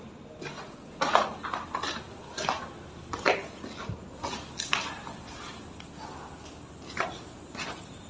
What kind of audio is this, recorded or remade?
recorded